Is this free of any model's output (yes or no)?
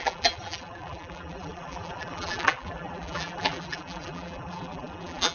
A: no